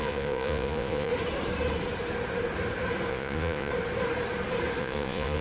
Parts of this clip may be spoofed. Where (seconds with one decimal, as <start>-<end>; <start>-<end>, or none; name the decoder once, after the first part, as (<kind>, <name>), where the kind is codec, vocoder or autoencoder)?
0.0-1.1 (vocoder, Vocos); 3.1-3.7; 4.8-5.4